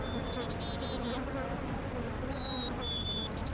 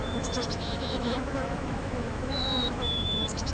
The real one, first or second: first